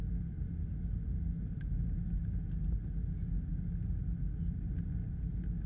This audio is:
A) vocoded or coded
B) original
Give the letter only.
B